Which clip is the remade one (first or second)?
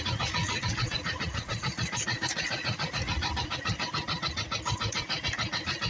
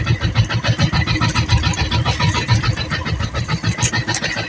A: first